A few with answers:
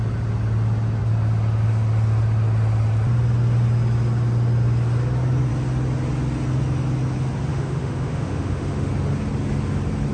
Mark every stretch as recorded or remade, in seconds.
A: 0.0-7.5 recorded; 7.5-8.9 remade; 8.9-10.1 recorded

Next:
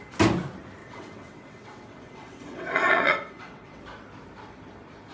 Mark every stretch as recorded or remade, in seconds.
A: 0.0-0.8 recorded; 0.8-3.8 remade; 3.8-5.1 recorded